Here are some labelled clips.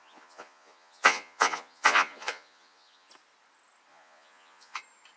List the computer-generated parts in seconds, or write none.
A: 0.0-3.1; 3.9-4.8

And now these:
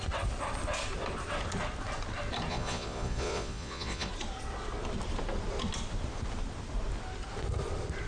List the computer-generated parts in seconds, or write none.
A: 2.5-4.1

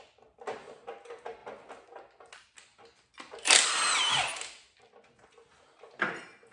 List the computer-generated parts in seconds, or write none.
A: none

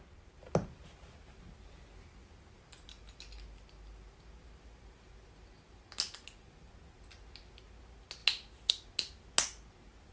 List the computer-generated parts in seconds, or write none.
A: none

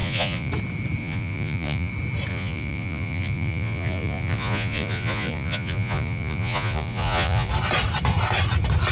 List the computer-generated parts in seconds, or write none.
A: 0.0-0.5; 1.0-1.9; 2.3-7.5

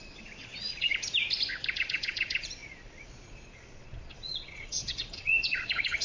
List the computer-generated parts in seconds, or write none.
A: 0.0-0.9; 1.7-6.0